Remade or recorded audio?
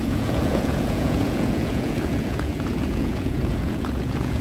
remade